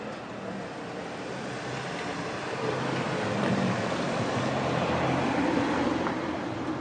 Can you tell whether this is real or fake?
fake